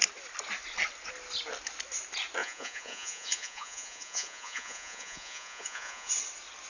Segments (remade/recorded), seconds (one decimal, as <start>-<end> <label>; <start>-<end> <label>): 0.0-2.4 recorded; 2.4-6.1 remade; 6.1-6.7 recorded